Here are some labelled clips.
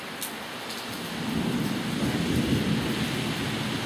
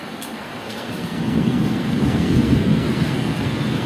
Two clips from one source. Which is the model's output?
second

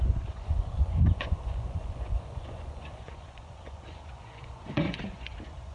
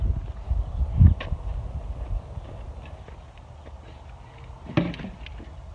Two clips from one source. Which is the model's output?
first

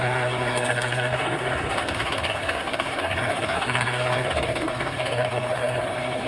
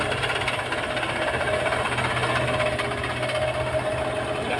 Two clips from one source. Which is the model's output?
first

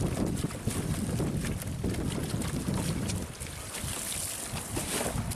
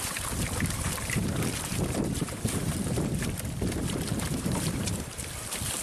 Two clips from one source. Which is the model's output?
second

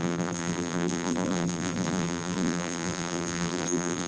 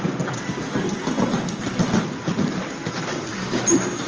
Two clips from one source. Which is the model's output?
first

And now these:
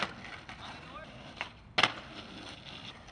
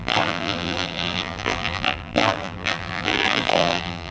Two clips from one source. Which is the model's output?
second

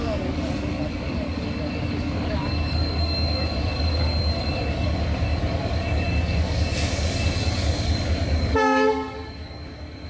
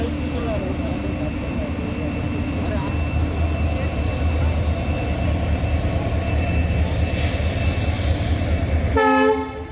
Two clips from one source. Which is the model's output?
first